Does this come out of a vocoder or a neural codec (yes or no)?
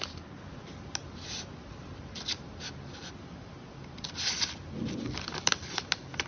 no